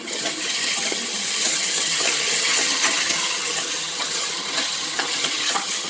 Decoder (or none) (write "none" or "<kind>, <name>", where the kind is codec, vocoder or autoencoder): vocoder, HiFi-GAN